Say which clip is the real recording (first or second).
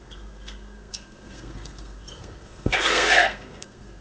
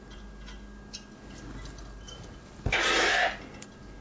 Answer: second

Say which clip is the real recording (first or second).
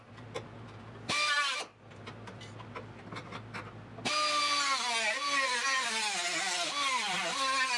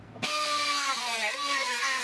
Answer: first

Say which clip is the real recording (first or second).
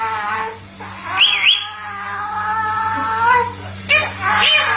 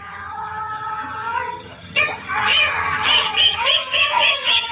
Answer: first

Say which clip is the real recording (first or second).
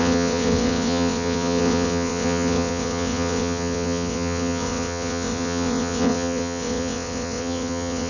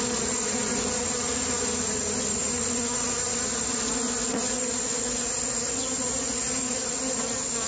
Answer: second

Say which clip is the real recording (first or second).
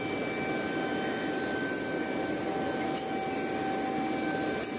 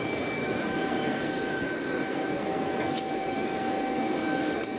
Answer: first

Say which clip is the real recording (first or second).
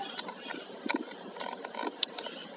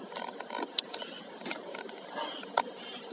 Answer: second